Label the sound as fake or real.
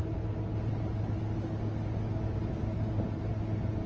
real